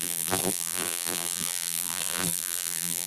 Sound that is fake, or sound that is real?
fake